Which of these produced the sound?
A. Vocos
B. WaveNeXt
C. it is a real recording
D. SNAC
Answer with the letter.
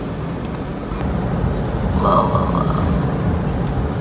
C